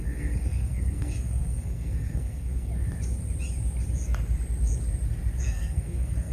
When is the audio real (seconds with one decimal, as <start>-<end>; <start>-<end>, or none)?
2.7-5.4